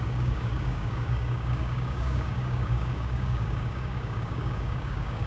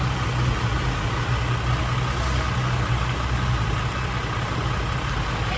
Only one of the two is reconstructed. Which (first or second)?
first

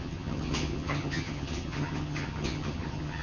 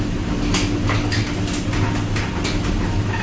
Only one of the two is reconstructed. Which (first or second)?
first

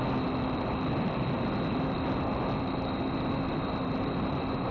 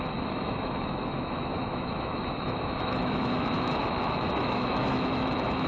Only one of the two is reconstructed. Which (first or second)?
second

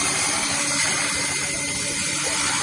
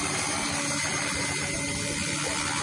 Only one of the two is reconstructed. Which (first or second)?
first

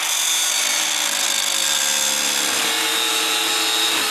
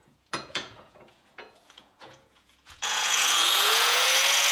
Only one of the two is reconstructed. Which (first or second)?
second